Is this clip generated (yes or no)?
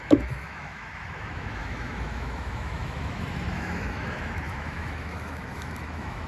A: yes